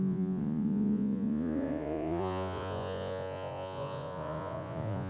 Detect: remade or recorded remade